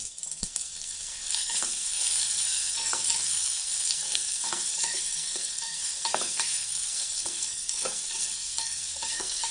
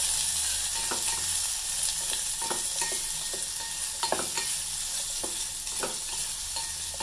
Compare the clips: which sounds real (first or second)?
second